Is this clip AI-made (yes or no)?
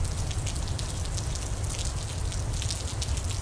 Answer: no